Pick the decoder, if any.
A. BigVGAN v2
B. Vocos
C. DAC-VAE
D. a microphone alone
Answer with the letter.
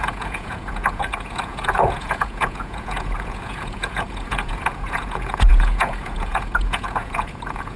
B